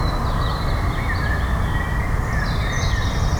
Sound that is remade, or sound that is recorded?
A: recorded